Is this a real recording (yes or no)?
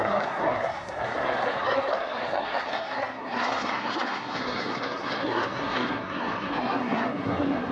no